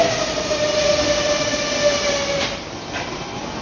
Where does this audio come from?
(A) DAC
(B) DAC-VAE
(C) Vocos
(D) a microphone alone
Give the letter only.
D